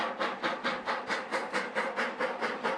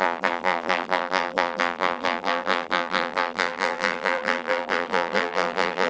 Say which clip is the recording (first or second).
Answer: first